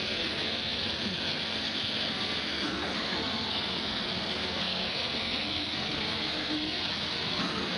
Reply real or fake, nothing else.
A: fake